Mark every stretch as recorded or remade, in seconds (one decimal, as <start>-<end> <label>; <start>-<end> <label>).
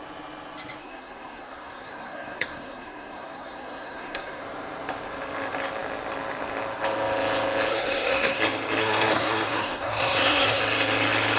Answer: 0.0-0.8 recorded; 0.8-4.4 remade; 4.4-7.7 recorded; 7.7-8.4 remade; 8.4-8.8 recorded; 8.8-10.6 remade; 10.6-11.4 recorded